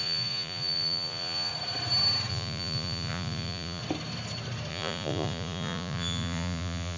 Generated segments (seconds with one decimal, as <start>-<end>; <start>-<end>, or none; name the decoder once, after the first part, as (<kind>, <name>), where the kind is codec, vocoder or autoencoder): 0.0-1.5 (vocoder, Vocos); 2.3-3.8; 4.7-7.0